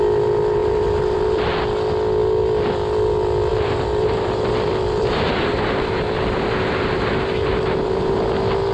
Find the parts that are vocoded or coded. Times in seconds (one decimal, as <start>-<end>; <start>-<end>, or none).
0.6-1.5; 3.5-8.2